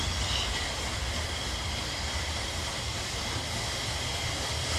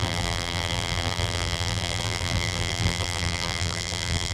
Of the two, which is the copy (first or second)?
second